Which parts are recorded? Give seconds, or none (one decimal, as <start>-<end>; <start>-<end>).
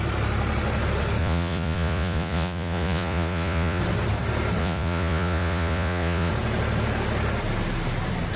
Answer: 0.0-1.2; 3.8-4.6; 6.3-8.4